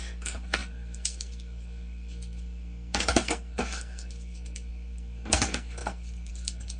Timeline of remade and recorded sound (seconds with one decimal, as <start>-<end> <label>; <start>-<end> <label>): 0.0-6.8 remade